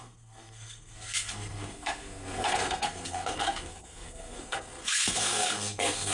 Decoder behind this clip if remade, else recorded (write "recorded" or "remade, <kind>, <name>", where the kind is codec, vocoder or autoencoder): remade, codec, SNAC